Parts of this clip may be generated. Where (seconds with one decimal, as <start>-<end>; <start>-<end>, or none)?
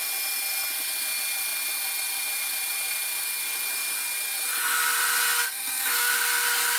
5.4-6.1